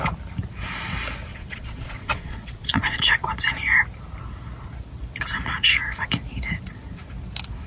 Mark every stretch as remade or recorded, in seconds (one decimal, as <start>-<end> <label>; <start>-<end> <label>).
0.0-1.3 recorded; 1.3-3.1 remade; 3.1-7.7 recorded